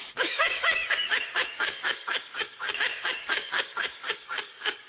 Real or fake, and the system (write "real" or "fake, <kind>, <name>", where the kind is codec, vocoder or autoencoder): fake, codec, DAC